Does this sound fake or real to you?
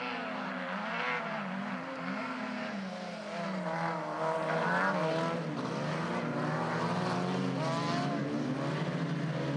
real